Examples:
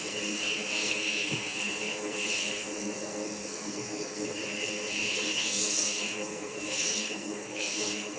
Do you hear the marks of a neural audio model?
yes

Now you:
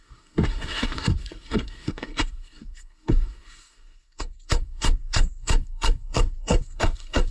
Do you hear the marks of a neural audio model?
yes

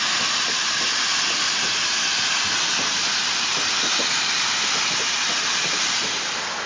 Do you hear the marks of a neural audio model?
no